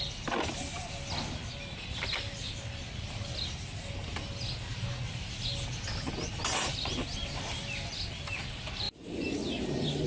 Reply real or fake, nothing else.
real